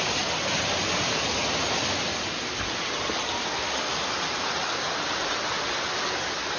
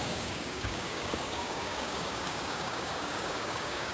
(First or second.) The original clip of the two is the first